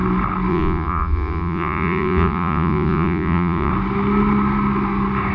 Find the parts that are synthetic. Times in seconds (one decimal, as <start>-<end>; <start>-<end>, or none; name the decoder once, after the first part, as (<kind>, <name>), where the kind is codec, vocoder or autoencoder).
0.5-3.7 (vocoder, Vocos)